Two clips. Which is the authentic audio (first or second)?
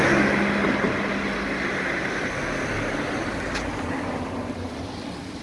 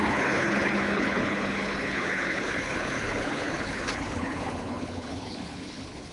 first